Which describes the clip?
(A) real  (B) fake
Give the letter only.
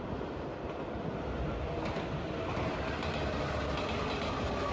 A